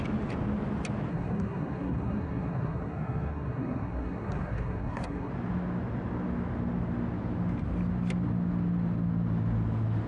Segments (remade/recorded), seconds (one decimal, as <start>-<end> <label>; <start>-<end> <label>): 0.0-1.1 recorded; 1.1-5.3 remade; 5.3-10.1 recorded